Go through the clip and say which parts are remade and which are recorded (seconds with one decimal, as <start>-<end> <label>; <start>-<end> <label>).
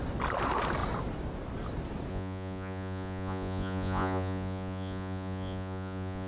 0.0-2.1 recorded; 2.1-6.3 remade